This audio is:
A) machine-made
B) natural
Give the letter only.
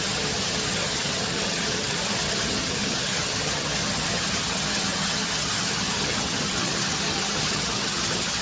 A